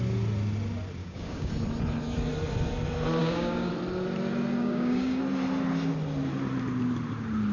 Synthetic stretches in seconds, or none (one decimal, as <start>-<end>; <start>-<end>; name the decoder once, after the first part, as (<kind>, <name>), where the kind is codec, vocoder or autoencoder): 1.0-1.5 (codec, DAC); 3.2-3.7; 4.6-5.2

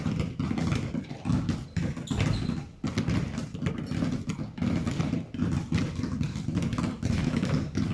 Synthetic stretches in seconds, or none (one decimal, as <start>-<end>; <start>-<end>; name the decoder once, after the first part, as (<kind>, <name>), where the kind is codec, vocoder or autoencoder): 7.2-7.9 (codec, DAC)

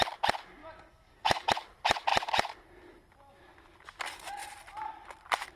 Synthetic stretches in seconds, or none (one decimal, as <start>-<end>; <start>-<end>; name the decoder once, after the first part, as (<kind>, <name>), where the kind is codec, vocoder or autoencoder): 0.6-1.5 (codec, DAC)

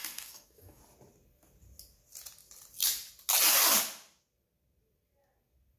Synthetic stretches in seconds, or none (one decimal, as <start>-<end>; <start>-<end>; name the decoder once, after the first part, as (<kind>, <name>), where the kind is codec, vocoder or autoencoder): 0.0-0.8 (codec, DAC)

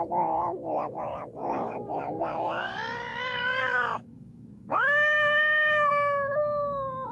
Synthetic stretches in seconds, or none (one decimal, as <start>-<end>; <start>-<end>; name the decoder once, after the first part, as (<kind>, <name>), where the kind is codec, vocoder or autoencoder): 0.0-7.1 (codec, DAC)

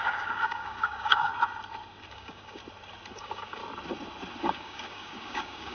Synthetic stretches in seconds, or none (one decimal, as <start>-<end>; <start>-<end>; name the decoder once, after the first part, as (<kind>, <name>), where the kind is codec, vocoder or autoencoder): 0.0-1.3 (codec, DAC); 2.1-2.6; 3.1-3.6; 4.4-5.7

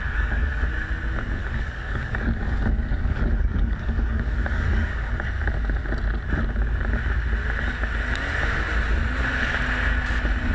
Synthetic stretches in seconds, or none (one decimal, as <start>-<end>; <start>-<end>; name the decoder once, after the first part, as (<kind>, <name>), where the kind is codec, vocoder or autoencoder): 0.0-0.7 (codec, DAC); 1.4-5.1

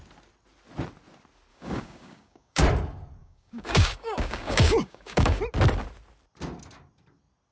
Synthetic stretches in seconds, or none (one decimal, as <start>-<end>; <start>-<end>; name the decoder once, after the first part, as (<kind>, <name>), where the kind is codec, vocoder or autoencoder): 1.5-2.6 (codec, DAC); 3.2-5.4